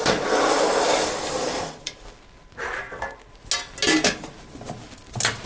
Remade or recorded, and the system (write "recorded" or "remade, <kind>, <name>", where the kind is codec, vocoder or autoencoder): recorded